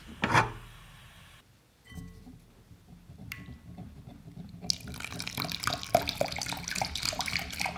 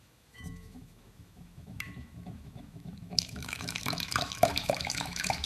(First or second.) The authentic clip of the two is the first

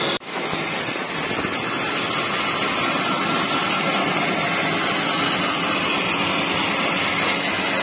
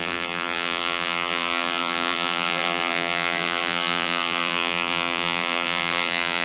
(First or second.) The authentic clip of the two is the first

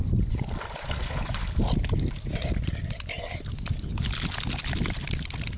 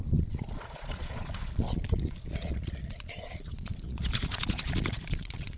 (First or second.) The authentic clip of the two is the first